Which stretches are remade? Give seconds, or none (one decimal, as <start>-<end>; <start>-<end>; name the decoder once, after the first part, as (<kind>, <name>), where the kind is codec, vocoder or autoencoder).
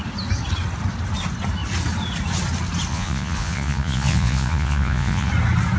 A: 2.9-5.3 (vocoder, Vocos)